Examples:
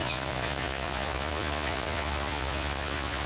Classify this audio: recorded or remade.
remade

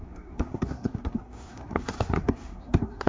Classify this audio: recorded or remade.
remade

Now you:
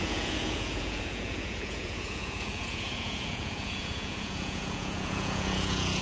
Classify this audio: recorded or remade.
remade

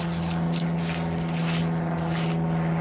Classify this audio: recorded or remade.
recorded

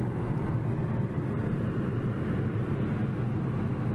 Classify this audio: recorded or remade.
recorded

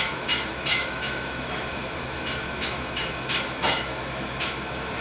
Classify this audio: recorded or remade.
remade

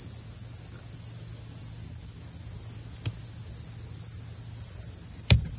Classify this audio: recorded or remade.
recorded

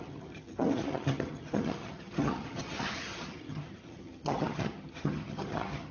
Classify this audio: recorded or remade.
remade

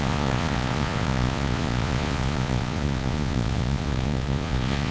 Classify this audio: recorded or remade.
remade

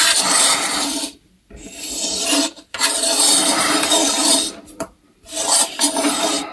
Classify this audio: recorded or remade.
recorded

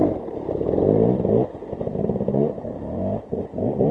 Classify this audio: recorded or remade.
remade